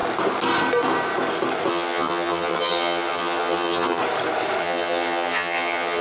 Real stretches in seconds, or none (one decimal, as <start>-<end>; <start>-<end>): 0.0-1.7; 4.0-4.6